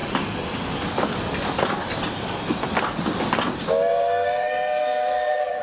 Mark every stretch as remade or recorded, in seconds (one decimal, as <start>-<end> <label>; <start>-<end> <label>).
0.0-3.9 recorded; 3.9-5.6 remade